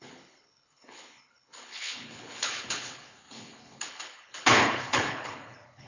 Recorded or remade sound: remade